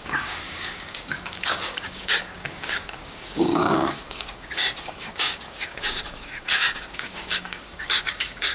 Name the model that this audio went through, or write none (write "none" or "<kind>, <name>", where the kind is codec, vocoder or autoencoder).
codec, DAC